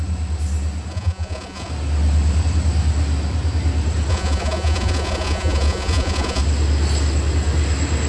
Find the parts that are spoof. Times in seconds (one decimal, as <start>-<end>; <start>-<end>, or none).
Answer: 0.9-1.7; 4.1-6.4